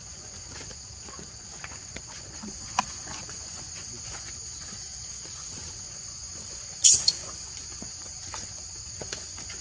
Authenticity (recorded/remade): remade